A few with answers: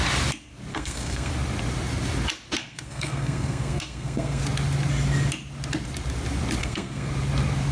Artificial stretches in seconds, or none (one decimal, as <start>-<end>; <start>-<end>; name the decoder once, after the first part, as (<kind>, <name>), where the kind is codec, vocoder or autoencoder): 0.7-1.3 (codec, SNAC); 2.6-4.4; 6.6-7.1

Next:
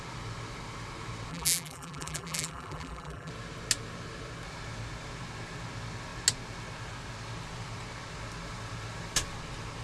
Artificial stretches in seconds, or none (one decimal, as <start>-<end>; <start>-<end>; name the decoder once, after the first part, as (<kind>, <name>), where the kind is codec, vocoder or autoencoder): 1.3-3.3 (vocoder, BigVGAN v2)

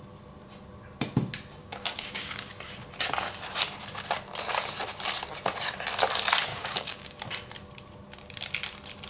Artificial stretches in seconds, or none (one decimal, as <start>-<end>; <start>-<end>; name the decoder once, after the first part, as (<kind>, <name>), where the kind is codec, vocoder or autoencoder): 1.6-2.5 (codec, DAC); 6.5-7.2

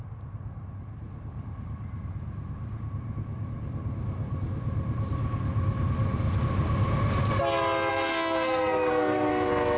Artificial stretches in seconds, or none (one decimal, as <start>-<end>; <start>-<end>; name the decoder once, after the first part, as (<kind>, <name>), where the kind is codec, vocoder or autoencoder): 7.9-9.3 (codec, SNAC)

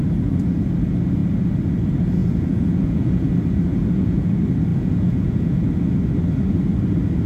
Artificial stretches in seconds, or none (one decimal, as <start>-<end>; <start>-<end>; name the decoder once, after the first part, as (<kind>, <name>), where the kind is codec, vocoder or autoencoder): 2.2-3.3 (vocoder, Vocos); 3.7-4.3; 4.7-5.6

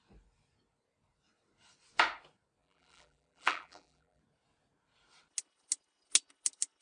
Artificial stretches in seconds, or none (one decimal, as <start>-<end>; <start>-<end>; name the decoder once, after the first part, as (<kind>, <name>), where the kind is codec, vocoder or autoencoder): 2.6-4.2 (vocoder, BigVGAN v2)

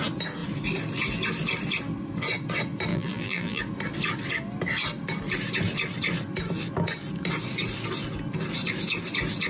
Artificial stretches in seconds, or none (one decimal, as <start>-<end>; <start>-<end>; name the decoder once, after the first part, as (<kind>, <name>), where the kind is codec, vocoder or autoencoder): 2.9-3.6 (vocoder, BigVGAN v2)